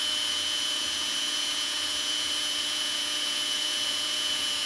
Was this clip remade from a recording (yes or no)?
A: yes